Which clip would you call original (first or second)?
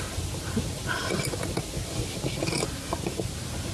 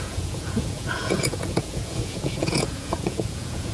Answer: first